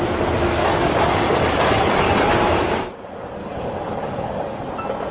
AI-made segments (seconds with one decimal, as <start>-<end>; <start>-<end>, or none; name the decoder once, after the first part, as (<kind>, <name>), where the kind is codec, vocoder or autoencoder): 0.6-1.5 (codec, DAC); 3.4-4.6